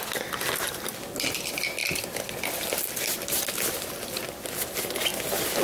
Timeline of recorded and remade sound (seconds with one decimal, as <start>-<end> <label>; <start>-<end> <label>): 0.0-5.6 recorded